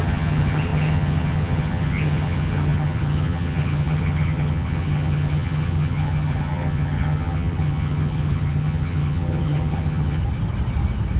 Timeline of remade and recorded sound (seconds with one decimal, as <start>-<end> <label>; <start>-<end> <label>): 0.0-10.2 remade; 10.2-11.2 recorded